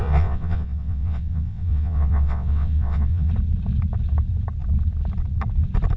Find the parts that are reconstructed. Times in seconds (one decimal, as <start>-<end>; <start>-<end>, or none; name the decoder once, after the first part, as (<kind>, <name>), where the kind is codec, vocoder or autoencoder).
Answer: 0.0-3.3 (vocoder, WaveNeXt)